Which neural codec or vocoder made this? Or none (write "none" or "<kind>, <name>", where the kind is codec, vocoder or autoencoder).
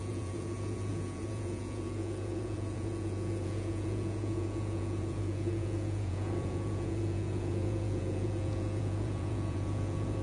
vocoder, Vocos